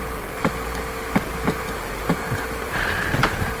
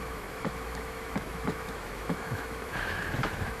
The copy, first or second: second